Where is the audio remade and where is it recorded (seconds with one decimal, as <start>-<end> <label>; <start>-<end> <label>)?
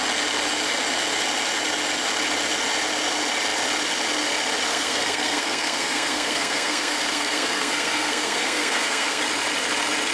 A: 0.0-4.7 recorded; 4.7-9.2 remade; 9.2-10.1 recorded